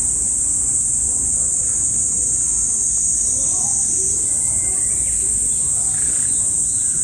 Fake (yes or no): no